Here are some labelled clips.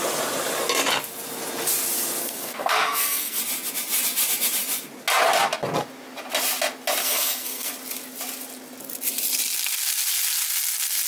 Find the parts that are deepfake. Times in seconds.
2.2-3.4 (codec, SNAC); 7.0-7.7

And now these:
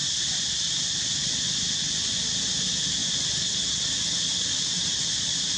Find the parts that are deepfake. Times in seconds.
0.0-1.1 (vocoder, BigVGAN v2)

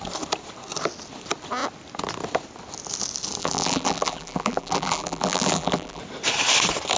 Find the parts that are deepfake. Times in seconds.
3.4-6.0 (vocoder, BigVGAN v2)

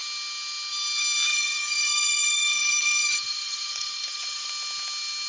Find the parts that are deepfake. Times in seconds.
1.3-4.5 (vocoder, Vocos)